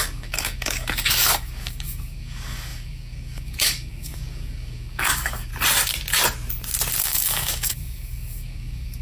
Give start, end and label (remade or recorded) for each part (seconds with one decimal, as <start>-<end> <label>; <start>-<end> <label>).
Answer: 0.0-5.5 remade; 5.5-7.0 recorded; 7.0-9.0 remade